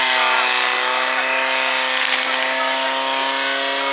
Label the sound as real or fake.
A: real